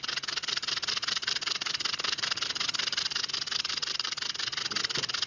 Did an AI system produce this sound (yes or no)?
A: no